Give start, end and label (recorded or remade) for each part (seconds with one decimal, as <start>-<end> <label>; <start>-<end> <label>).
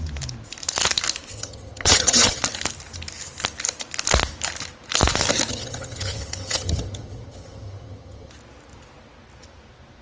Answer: 0.0-1.3 recorded; 1.3-2.4 remade; 2.4-5.5 recorded; 5.5-8.3 remade; 8.3-10.0 recorded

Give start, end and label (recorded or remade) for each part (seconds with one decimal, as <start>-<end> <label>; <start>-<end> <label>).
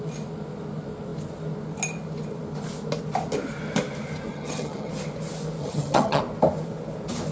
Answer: 0.0-4.3 recorded; 4.3-4.9 remade; 4.9-5.6 recorded; 5.6-6.2 remade; 6.2-7.3 recorded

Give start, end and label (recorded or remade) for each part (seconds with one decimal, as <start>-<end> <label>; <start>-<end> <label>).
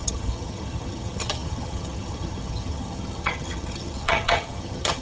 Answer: 0.0-5.0 remade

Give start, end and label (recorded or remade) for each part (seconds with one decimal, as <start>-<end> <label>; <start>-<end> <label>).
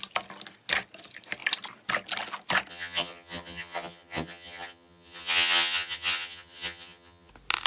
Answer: 0.0-2.7 recorded; 2.7-7.3 remade; 7.3-7.7 recorded